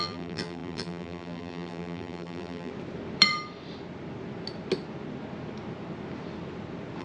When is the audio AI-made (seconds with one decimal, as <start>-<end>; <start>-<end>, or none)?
0.0-2.7